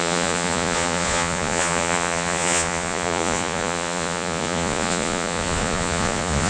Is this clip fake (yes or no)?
yes